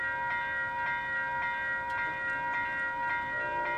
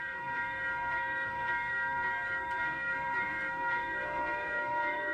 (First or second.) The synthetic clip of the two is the second